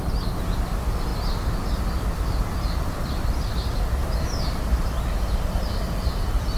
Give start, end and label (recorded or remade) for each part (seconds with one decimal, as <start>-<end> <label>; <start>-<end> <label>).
0.0-4.0 recorded; 4.0-4.9 remade; 4.9-6.6 recorded